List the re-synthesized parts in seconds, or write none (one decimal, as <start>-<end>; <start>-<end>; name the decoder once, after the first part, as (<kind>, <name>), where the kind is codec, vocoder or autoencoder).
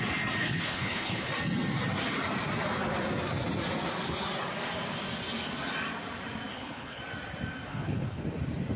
0.4-1.3 (codec, HILCodec); 6.5-7.0; 7.7-8.2